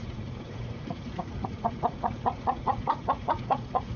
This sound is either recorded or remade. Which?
remade